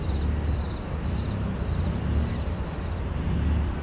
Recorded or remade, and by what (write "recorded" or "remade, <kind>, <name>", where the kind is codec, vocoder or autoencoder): recorded